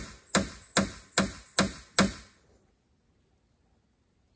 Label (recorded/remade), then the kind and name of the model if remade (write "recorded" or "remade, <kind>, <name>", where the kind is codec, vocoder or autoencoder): recorded